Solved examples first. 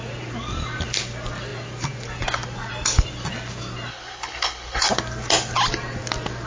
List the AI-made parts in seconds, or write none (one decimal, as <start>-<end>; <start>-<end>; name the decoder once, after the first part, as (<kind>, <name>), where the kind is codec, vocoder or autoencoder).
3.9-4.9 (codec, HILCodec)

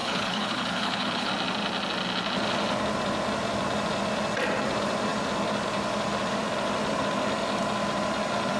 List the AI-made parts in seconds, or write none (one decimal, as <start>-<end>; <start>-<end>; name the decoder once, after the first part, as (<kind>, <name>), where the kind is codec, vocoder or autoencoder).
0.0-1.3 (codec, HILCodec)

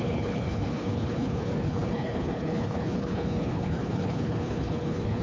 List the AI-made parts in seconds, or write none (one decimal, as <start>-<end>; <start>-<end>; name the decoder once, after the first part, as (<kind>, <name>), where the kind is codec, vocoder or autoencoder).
0.0-5.2 (codec, HILCodec)

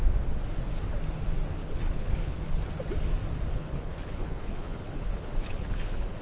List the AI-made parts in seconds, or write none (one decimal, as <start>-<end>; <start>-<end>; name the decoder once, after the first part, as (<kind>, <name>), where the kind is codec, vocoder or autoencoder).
1.6-2.7 (codec, HILCodec); 3.5-6.2

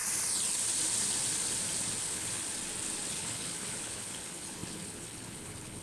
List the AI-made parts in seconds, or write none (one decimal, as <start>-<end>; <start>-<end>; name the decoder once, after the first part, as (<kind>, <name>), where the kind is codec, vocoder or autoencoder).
2.0-2.4 (codec, HILCodec); 3.1-5.8